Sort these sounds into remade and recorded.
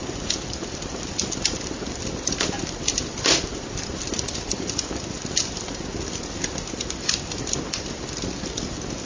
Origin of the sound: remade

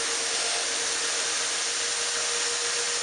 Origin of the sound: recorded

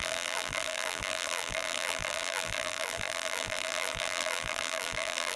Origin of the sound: remade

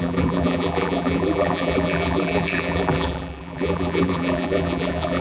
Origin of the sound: remade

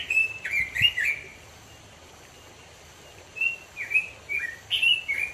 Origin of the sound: recorded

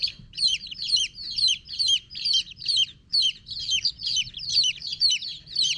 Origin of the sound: remade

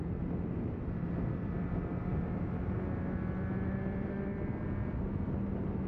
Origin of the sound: recorded